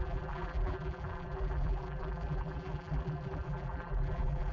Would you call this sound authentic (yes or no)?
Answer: no